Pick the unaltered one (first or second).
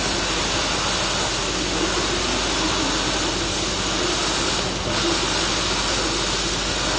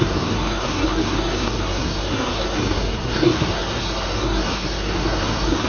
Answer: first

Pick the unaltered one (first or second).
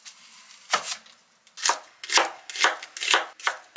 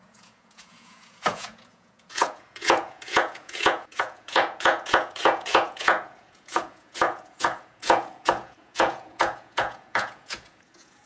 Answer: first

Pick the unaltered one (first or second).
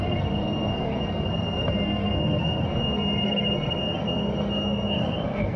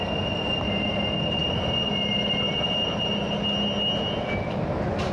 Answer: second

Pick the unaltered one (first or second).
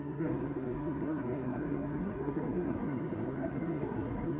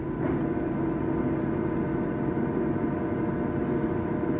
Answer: second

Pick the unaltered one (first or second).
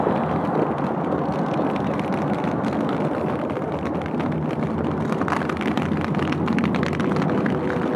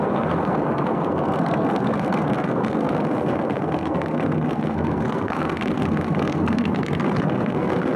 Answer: first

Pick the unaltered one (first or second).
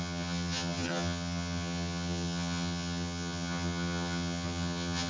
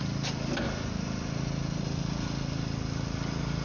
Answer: second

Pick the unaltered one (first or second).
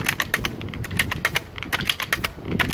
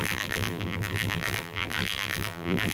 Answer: first